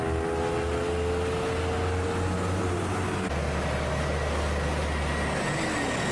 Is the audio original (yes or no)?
yes